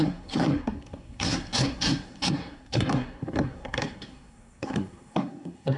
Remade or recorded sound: remade